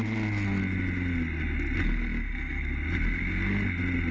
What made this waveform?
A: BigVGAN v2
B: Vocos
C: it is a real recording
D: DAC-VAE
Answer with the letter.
C